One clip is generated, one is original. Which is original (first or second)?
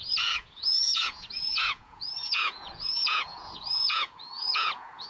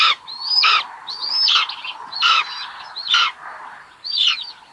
second